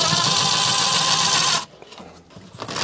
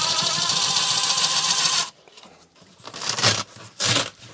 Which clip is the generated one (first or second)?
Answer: second